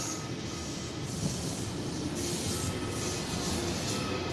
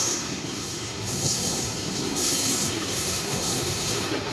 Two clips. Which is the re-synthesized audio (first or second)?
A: second